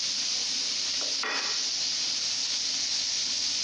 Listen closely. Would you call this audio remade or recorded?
recorded